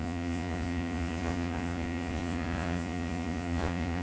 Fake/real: fake